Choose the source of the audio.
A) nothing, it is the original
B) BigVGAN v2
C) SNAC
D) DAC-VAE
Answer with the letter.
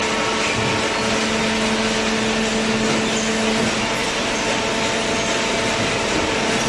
A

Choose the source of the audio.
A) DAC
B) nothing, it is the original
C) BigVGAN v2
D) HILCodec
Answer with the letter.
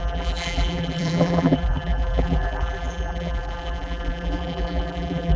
C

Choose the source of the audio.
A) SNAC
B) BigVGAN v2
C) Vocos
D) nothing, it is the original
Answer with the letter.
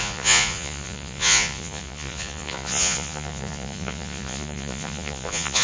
C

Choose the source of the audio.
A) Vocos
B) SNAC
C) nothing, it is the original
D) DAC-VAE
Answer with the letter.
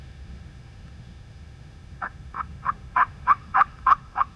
D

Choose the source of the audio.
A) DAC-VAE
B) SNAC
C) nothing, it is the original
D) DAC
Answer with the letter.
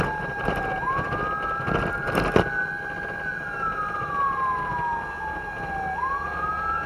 C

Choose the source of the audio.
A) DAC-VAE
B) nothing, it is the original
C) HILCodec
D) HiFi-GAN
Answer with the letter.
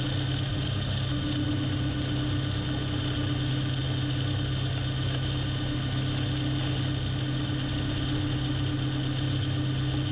B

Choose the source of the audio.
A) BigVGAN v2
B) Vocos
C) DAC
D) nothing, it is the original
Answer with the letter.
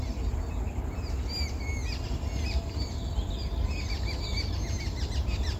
D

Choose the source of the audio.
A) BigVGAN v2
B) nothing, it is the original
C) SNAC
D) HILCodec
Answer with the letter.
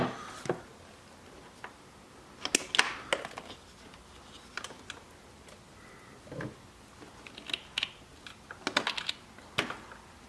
B